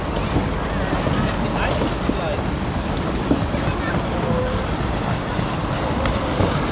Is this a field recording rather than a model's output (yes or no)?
yes